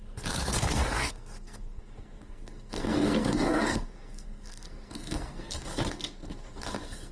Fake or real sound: fake